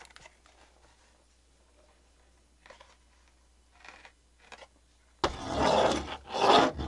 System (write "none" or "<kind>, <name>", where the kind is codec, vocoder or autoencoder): none